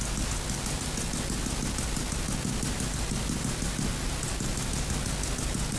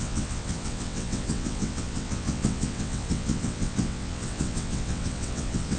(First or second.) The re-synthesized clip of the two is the second